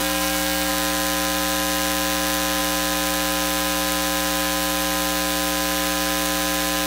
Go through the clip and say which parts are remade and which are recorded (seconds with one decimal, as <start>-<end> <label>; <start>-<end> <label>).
0.0-0.7 remade; 0.7-6.9 recorded